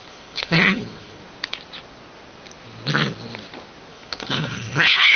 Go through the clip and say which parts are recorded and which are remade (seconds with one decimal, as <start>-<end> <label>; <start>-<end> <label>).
0.0-1.2 remade; 1.2-3.9 recorded; 3.9-5.2 remade